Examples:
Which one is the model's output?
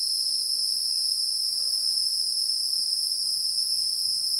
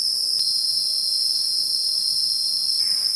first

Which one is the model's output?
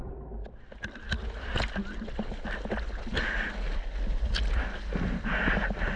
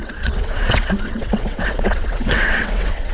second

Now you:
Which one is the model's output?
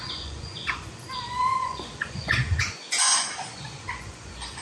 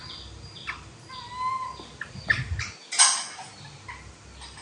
first